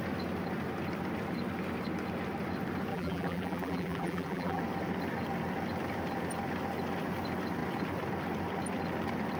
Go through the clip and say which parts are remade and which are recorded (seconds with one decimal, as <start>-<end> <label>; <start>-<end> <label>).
0.0-2.9 recorded; 2.9-4.6 remade; 4.6-9.4 recorded